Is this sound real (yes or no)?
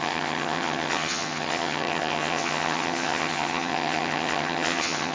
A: no